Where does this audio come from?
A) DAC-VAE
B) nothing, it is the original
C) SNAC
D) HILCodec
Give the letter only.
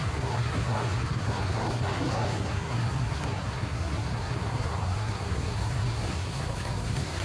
C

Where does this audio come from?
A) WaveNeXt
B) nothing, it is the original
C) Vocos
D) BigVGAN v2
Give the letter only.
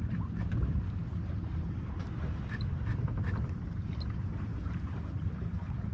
D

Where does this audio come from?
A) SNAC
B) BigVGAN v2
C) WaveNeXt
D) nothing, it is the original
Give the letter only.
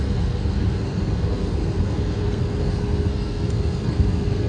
A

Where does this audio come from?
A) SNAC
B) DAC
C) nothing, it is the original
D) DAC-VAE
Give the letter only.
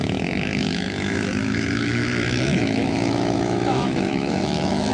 D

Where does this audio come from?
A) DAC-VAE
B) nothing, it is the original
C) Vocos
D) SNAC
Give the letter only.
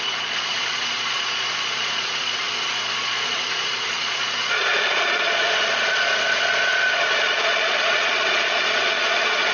C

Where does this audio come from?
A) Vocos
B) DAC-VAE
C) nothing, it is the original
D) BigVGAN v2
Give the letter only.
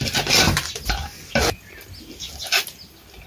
C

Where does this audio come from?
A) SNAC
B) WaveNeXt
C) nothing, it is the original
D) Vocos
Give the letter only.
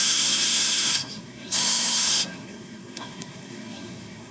A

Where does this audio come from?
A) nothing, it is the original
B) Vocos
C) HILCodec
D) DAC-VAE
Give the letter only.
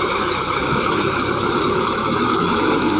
D